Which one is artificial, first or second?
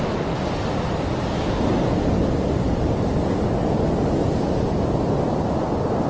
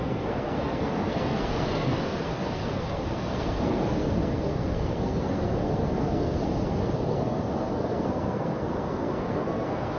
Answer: second